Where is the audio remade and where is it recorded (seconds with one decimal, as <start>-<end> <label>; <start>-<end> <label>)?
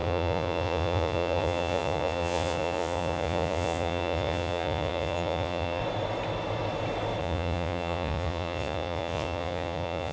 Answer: 0.0-5.8 remade; 5.8-7.2 recorded; 7.2-10.1 remade